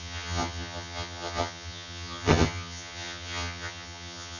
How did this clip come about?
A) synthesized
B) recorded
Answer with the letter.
A